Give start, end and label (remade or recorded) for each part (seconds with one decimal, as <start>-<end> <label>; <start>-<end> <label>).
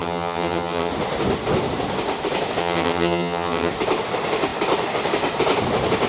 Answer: 0.0-0.9 remade; 0.9-2.6 recorded; 2.6-3.7 remade; 3.7-6.1 recorded